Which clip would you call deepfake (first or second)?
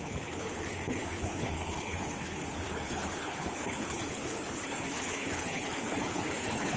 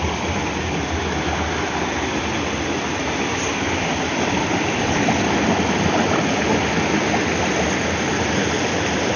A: first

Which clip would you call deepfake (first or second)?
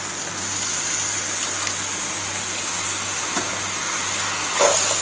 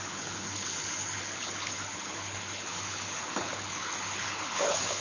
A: second